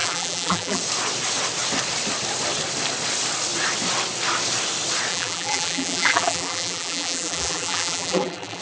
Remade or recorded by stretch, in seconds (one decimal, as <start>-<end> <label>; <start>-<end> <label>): 0.0-0.8 remade; 0.8-5.1 recorded; 5.1-8.6 remade

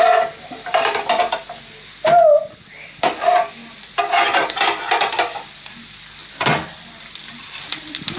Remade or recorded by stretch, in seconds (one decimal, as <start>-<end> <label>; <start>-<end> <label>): 0.0-1.4 remade; 1.4-2.5 recorded; 2.5-3.6 remade; 3.6-4.5 recorded; 4.5-8.2 remade

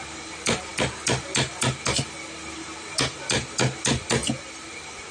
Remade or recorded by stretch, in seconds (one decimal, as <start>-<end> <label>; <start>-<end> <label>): 0.0-5.1 recorded

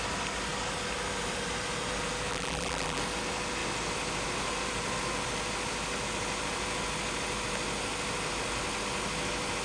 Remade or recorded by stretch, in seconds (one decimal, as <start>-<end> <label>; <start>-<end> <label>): 0.0-2.3 recorded; 2.3-3.0 remade; 3.0-9.6 recorded

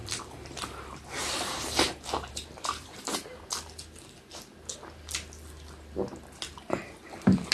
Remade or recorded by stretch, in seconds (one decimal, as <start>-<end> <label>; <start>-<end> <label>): 0.0-3.4 remade; 3.4-7.5 recorded

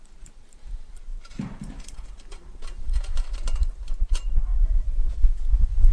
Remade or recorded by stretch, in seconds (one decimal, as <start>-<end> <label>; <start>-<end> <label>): 0.0-4.5 remade; 4.5-5.2 recorded; 5.2-5.9 remade